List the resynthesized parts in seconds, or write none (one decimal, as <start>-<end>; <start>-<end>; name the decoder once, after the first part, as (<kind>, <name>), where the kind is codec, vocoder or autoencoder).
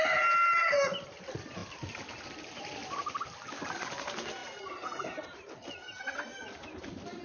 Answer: none